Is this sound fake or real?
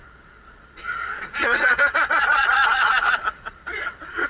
fake